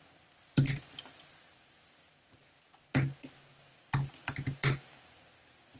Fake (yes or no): no